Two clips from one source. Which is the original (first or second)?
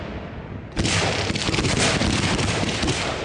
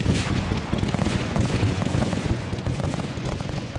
first